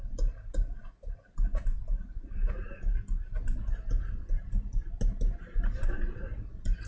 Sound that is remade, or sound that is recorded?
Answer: recorded